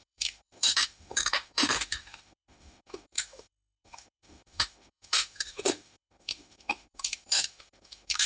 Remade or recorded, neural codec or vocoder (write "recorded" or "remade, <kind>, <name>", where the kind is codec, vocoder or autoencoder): remade, autoencoder, DAC-VAE